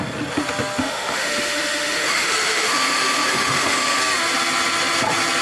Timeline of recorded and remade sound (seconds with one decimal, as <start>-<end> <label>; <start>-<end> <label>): 0.0-0.8 recorded; 0.8-4.0 remade; 4.0-5.4 recorded